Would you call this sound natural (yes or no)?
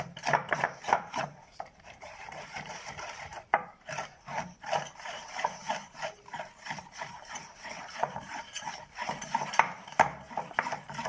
no